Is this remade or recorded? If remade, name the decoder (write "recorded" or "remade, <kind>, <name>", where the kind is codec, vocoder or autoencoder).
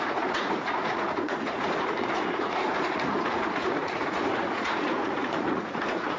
remade, vocoder, Vocos